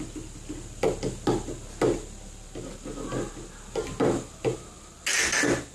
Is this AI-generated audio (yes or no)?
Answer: no